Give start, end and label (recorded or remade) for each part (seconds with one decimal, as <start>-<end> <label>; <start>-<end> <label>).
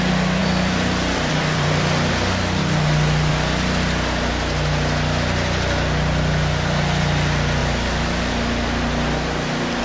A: 0.0-0.4 recorded; 0.4-2.1 remade; 2.1-2.6 recorded; 2.6-3.3 remade; 3.3-9.8 recorded